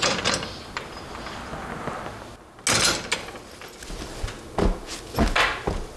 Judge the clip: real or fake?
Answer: real